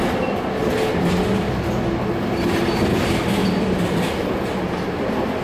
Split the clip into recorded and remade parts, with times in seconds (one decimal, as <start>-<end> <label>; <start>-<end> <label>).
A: 0.0-0.6 recorded; 0.6-2.0 remade; 2.0-3.4 recorded; 3.4-4.6 remade; 4.6-5.4 recorded